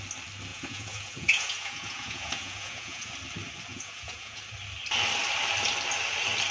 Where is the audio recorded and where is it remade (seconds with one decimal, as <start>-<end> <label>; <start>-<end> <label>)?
0.0-0.5 recorded; 0.5-3.1 remade; 3.1-3.7 recorded; 3.7-4.4 remade; 4.4-6.5 recorded